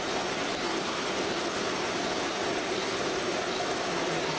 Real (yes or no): yes